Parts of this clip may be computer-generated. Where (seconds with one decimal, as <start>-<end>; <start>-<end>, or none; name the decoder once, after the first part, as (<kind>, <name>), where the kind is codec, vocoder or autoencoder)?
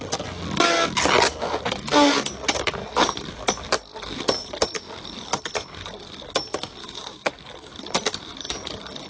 6.8-7.3 (autoencoder, DAC-VAE)